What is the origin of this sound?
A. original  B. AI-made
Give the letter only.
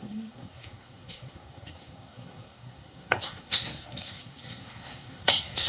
B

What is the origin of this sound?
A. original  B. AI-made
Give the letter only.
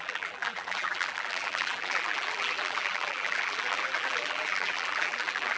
B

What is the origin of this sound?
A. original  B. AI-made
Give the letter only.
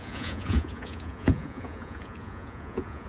B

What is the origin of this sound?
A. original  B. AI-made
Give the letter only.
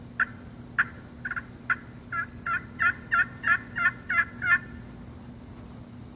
A